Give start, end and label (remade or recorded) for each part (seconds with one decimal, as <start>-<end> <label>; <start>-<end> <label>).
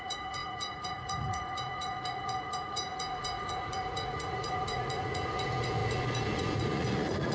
0.0-7.3 remade